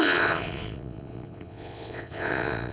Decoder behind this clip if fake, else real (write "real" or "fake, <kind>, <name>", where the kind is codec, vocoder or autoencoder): fake, vocoder, Vocos